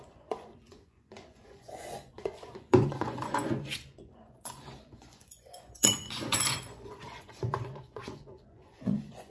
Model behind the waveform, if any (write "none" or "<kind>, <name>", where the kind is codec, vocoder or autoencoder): vocoder, Vocos